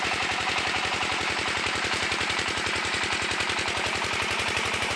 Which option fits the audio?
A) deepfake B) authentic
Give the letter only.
A